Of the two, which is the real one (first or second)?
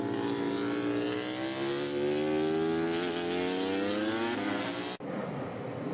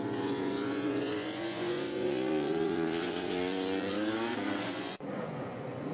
first